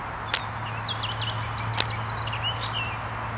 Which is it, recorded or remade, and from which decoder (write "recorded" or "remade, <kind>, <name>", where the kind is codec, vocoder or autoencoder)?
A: recorded